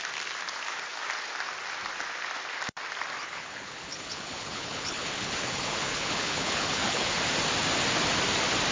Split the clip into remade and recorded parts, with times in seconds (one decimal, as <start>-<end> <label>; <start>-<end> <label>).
0.0-3.2 recorded; 3.2-7.2 remade; 7.2-8.7 recorded